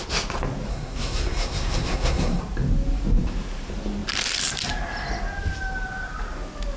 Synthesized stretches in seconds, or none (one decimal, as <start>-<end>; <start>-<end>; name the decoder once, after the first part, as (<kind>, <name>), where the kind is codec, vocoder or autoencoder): 0.7-2.4 (codec, SNAC)